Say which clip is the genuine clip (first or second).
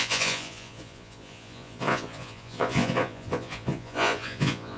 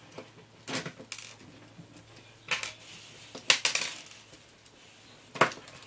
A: second